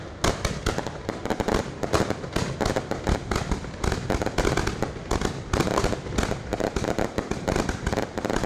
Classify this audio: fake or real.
real